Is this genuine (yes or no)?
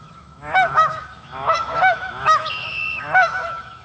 no